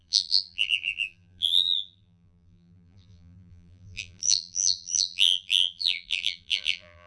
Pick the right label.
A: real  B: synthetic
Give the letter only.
B